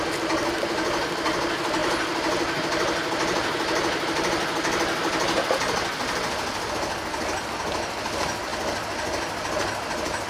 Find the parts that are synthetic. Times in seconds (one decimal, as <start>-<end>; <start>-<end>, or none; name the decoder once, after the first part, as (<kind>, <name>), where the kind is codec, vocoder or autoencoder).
none